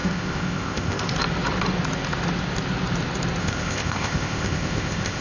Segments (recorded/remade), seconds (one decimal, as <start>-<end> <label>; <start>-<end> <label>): 0.0-1.1 remade; 1.1-3.4 recorded; 3.4-5.2 remade